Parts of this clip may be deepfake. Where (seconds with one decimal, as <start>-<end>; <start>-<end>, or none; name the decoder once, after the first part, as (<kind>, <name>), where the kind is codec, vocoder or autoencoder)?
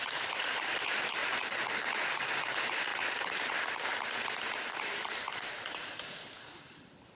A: 0.0-1.2 (vocoder, BigVGAN v2); 2.1-2.9; 5.2-7.1